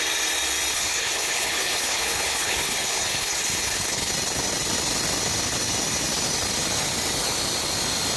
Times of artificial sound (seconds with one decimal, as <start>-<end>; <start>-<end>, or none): 0.7-4.1